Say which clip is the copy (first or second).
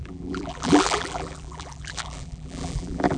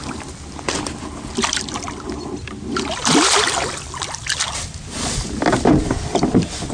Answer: first